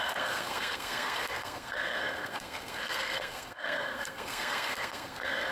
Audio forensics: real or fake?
fake